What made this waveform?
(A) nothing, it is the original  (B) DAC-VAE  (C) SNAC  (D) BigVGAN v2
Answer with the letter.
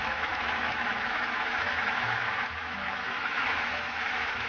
B